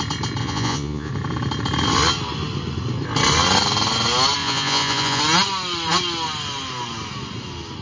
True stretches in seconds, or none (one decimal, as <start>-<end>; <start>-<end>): 0.0-0.4; 1.1-4.4; 5.2-7.8